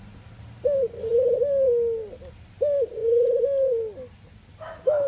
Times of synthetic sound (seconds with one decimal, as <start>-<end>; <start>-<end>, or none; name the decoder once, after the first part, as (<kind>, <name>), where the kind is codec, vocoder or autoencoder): none